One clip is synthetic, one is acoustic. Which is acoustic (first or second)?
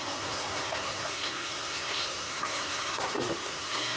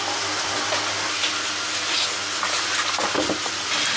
second